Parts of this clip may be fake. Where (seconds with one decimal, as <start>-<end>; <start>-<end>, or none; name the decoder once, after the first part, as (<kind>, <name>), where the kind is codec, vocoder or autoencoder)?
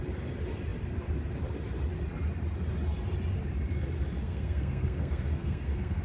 4.2-6.0 (codec, SNAC)